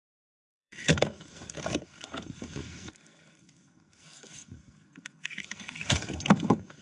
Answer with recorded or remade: remade